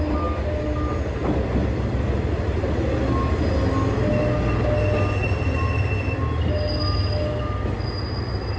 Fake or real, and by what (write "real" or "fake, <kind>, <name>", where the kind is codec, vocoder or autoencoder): real